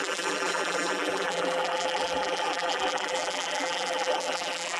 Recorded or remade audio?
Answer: remade